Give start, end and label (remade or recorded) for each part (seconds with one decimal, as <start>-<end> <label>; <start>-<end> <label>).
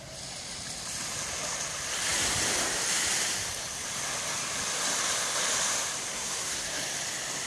0.0-6.1 recorded; 6.1-6.8 remade; 6.8-7.5 recorded